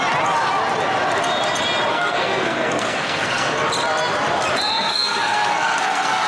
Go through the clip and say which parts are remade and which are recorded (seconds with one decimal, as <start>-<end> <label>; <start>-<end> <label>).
0.0-1.9 recorded; 1.9-3.6 remade; 3.6-4.9 recorded; 4.9-6.3 remade